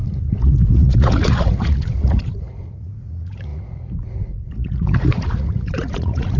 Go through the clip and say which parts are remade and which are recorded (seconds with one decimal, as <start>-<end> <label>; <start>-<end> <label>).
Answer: 0.0-6.4 remade